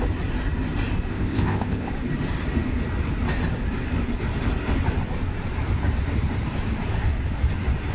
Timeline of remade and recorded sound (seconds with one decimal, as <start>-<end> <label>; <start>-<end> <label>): 0.0-1.1 recorded; 1.1-1.9 remade; 1.9-7.9 recorded